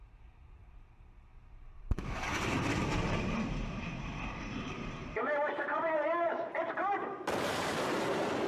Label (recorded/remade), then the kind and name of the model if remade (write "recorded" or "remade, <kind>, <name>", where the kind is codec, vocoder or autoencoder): remade, vocoder, BigVGAN v2